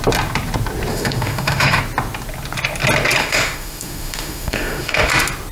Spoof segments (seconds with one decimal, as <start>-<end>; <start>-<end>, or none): 0.9-1.8; 3.2-5.1